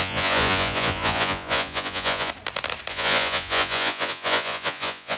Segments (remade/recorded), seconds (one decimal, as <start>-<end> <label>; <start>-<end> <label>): 0.0-2.3 remade; 2.3-2.9 recorded; 2.9-5.2 remade